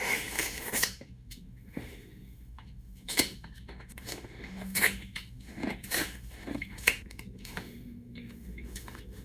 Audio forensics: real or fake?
fake